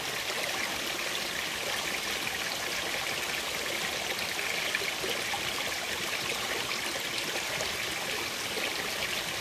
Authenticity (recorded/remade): recorded